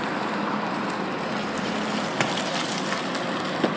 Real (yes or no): yes